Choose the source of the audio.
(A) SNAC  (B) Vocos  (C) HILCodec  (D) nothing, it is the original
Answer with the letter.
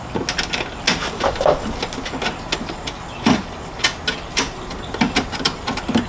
D